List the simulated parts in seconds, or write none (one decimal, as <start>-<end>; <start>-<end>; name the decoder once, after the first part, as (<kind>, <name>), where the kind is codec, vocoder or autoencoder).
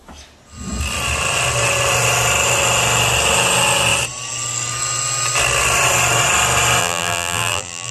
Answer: 6.8-7.9 (vocoder, BigVGAN v2)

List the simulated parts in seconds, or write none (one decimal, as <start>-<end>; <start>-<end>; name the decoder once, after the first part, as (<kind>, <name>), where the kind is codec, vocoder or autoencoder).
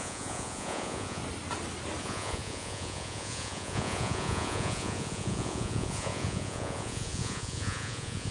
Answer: 0.0-1.2 (vocoder, Vocos); 2.0-8.3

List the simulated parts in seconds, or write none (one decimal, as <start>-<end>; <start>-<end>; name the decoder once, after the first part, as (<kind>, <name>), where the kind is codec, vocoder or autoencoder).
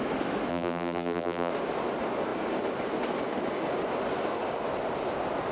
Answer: 0.5-1.5 (vocoder, BigVGAN v2)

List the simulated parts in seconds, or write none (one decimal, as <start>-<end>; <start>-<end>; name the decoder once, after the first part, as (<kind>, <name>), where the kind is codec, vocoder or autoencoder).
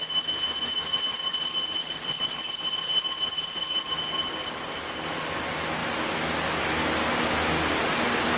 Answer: 1.8-2.4 (vocoder, Vocos)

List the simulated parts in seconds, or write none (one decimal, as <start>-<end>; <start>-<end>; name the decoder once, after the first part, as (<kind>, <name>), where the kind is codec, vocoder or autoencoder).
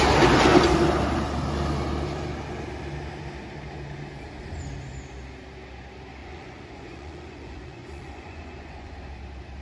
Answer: 6.2-8.9 (vocoder, Vocos)